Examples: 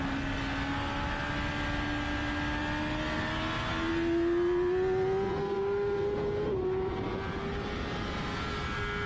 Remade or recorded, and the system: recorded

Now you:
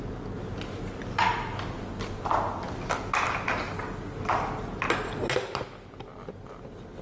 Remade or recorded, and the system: recorded